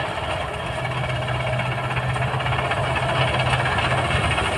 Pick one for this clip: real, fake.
real